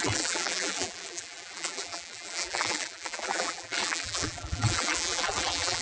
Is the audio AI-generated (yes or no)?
yes